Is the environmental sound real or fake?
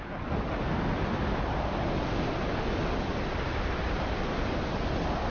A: real